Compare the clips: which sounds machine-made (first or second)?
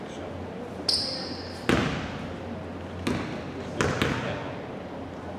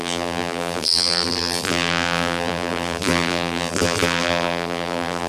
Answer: second